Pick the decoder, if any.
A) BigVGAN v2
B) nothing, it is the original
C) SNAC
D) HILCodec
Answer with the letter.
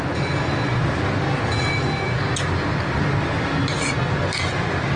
B